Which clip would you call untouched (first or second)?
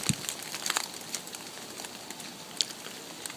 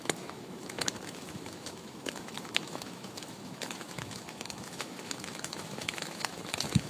first